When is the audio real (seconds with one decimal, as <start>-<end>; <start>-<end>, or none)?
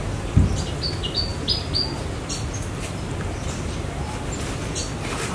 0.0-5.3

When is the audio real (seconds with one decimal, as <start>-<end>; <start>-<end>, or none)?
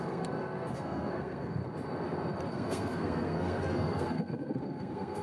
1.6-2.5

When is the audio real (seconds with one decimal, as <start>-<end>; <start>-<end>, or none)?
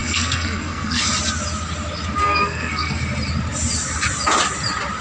1.1-2.2; 3.0-5.0